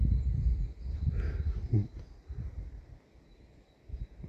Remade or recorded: recorded